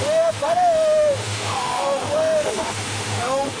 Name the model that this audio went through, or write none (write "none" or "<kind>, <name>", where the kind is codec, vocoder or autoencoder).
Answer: autoencoder, DAC-VAE